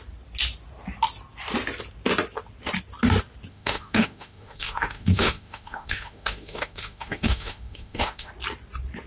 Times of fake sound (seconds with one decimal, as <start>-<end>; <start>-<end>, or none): 3.5-8.3